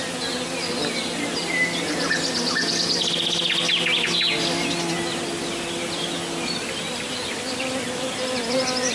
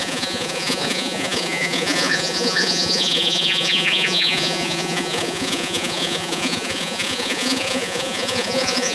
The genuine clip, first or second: first